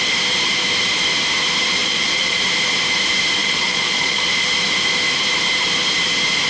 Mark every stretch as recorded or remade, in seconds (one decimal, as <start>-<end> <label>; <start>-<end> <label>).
0.0-1.8 recorded; 1.8-2.4 remade; 2.4-3.4 recorded; 3.4-4.2 remade; 4.2-6.5 recorded